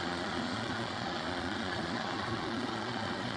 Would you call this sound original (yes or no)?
no